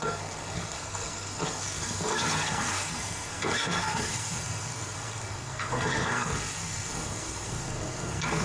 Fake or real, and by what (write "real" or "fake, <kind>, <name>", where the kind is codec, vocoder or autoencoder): fake, codec, SNAC